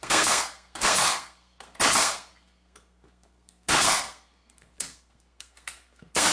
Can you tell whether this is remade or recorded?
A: remade